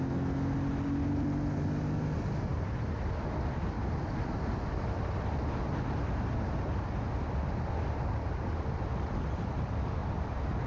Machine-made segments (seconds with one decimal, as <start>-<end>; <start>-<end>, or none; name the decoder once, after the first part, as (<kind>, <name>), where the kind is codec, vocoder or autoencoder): 10.0-10.7 (vocoder, BigVGAN v2)